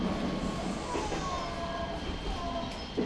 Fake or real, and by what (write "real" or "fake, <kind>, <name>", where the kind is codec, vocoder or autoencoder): real